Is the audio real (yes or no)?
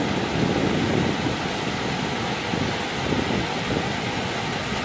yes